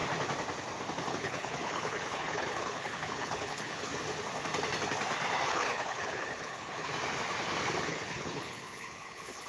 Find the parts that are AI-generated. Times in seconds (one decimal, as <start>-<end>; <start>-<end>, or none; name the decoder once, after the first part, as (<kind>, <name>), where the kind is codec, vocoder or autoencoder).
1.1-3.9 (codec, HILCodec); 5.5-6.9; 7.9-9.5